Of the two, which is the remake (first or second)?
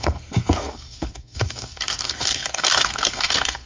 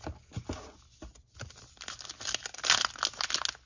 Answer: first